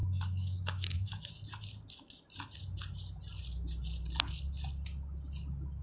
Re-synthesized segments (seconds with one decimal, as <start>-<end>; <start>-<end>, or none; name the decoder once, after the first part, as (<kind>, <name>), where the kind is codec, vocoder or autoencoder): 0.0-1.3 (autoencoder, DAC-VAE)